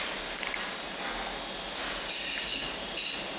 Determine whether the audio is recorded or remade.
recorded